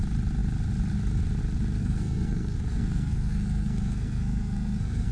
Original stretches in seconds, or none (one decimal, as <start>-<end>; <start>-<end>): 0.0-1.8